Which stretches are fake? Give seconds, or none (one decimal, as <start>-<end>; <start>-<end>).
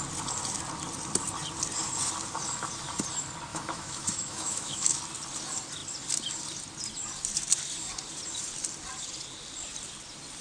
3.5-5.0